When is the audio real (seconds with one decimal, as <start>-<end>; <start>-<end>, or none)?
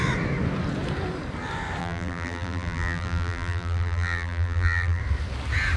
0.0-1.8; 5.0-5.8